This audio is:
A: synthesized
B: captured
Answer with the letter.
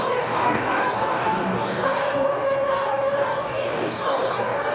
A